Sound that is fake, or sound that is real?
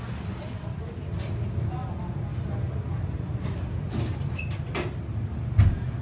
real